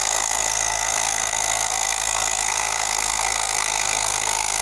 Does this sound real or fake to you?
fake